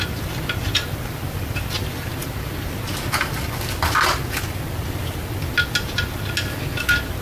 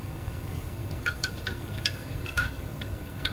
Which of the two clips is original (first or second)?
first